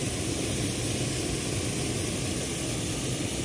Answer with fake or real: real